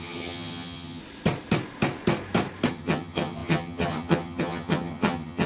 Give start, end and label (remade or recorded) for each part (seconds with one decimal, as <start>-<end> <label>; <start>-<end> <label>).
0.0-1.0 remade; 1.0-2.7 recorded; 2.7-5.5 remade